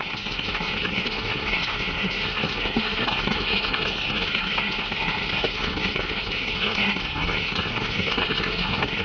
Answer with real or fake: fake